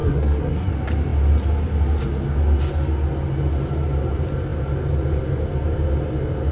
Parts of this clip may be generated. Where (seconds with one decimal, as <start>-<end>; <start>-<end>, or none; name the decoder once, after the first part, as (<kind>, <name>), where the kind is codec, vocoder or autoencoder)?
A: 0.0-0.7 (codec, SNAC)